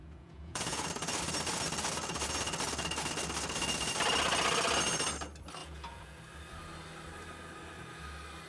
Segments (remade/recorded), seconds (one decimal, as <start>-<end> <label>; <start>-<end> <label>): 0.0-0.8 remade; 0.8-5.6 recorded; 5.6-6.2 remade; 6.2-8.5 recorded